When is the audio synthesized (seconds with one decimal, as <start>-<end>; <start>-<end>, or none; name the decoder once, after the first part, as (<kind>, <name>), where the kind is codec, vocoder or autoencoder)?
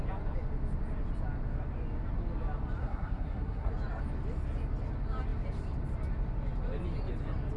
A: 2.8-3.7 (codec, SNAC)